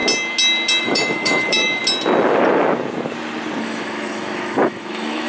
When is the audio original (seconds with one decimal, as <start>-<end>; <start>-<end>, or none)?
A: 0.0-0.8; 1.8-3.6